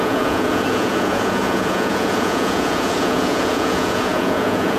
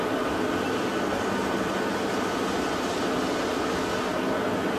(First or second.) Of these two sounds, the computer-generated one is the first